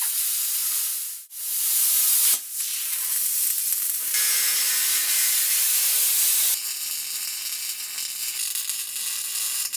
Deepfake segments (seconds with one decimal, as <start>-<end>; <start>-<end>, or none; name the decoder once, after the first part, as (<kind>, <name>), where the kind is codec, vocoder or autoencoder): 0.6-1.8 (vocoder, BigVGAN v2); 2.2-3.0